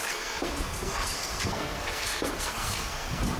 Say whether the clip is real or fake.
fake